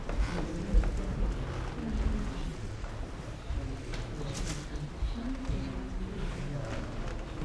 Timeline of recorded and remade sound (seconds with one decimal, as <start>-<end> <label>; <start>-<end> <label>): 0.0-2.4 recorded; 2.4-2.9 remade; 2.9-7.4 recorded